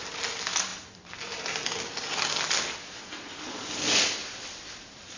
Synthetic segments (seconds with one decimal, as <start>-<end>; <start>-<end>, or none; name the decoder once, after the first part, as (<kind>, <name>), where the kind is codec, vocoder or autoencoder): 4.2-5.2 (vocoder, BigVGAN v2)